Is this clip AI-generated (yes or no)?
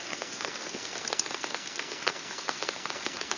yes